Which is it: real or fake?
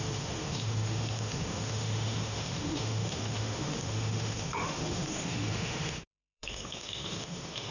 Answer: fake